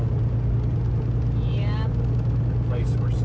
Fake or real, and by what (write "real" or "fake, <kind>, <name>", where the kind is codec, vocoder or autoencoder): real